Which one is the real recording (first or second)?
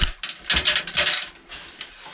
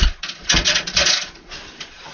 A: first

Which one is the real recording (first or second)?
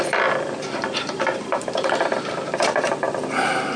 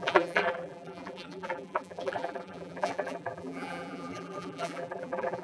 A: first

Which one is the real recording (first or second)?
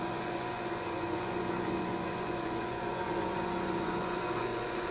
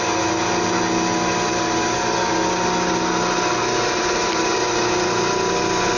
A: second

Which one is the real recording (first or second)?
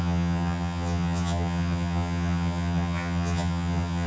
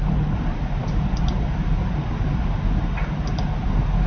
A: second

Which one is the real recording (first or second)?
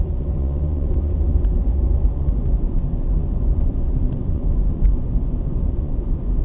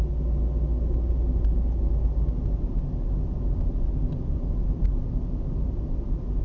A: second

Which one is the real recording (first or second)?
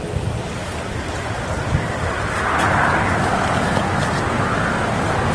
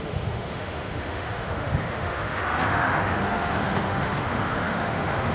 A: first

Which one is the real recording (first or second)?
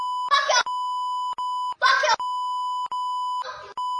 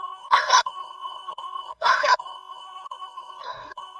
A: first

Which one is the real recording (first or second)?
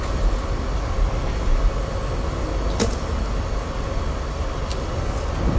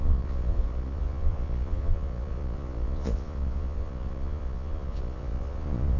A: first